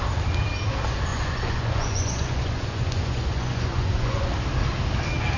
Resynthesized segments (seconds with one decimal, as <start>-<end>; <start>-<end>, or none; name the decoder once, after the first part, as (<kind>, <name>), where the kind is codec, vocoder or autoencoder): 1.1-4.3 (vocoder, Vocos)